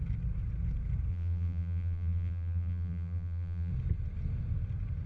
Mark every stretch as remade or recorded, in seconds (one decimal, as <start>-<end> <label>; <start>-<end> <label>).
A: 0.0-1.1 recorded; 1.1-3.7 remade; 3.7-5.1 recorded